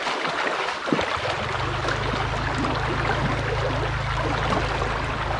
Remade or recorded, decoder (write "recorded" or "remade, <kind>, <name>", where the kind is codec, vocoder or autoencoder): recorded